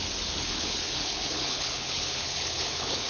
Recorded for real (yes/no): no